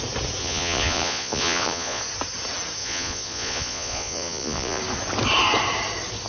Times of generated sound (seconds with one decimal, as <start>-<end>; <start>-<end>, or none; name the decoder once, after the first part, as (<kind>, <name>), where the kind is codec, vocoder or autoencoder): 0.4-2.0 (vocoder, Vocos); 2.8-4.8